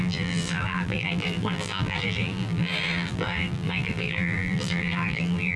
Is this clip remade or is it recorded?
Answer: remade